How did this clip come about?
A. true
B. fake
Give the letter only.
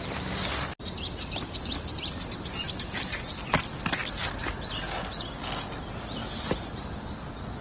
A